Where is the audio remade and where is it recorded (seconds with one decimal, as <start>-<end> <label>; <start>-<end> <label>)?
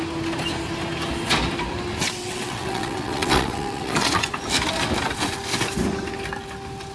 0.0-2.0 recorded; 2.0-4.3 remade; 4.3-6.9 recorded